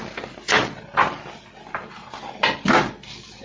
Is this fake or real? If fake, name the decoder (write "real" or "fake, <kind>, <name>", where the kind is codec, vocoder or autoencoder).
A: real